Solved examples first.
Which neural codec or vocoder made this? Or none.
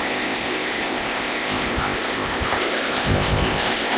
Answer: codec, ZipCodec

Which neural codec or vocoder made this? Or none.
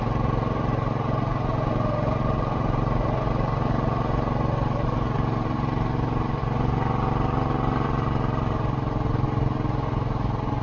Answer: none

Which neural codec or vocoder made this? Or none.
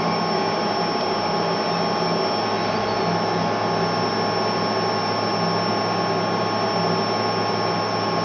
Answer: none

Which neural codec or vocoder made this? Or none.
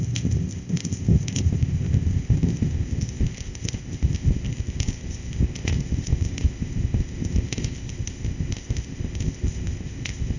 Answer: codec, ZipCodec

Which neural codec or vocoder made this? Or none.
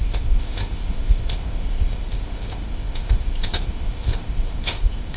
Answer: codec, ZipCodec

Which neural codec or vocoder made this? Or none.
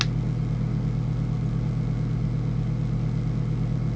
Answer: none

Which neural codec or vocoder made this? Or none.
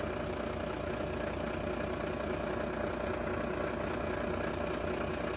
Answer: none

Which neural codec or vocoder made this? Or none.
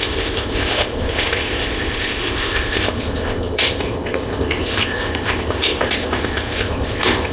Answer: codec, ZipCodec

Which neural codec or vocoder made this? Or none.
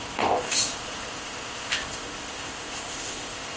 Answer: codec, ZipCodec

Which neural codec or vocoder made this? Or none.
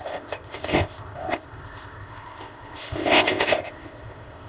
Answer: codec, ZipCodec